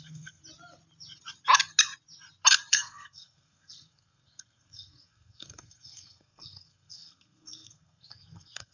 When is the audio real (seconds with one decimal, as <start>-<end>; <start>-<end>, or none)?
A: 0.4-2.7